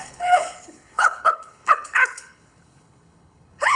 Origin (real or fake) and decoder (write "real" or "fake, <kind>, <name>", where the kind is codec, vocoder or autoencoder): fake, codec, HILCodec